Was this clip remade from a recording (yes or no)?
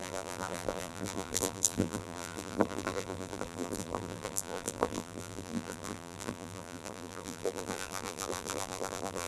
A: yes